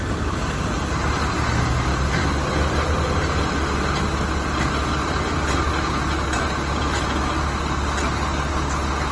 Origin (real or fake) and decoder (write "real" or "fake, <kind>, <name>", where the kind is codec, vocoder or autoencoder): real